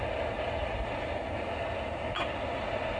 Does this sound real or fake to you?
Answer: real